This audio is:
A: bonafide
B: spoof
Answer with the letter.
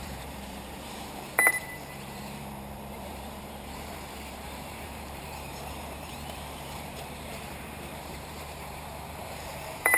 B